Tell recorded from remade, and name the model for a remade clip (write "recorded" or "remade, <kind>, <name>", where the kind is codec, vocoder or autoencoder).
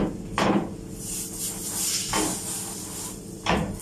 recorded